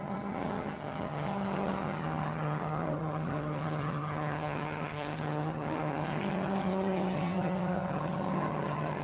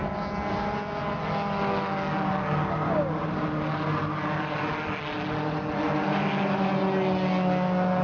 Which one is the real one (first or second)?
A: second